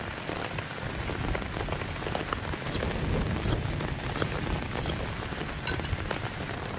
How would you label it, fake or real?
real